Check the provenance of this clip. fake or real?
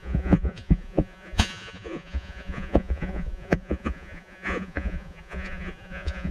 fake